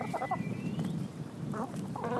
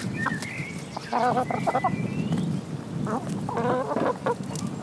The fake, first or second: first